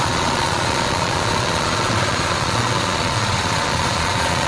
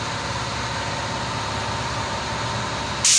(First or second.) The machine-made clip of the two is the first